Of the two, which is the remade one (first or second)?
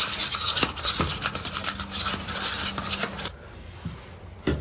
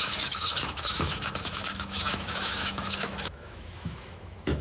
second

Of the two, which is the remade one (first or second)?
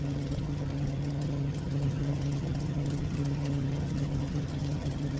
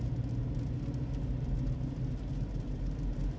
first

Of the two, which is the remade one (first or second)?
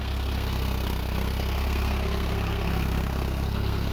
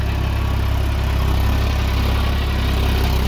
first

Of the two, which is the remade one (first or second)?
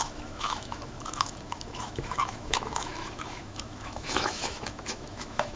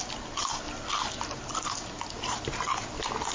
first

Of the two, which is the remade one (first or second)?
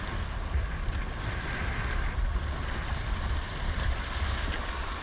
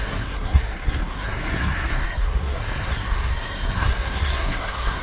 second